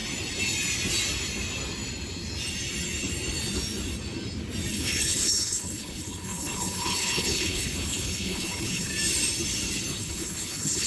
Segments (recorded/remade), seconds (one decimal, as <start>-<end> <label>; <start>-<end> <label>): 0.0-4.7 recorded; 4.7-8.9 remade; 8.9-10.0 recorded; 10.0-10.9 remade